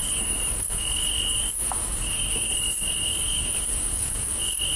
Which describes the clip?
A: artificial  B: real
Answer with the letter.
A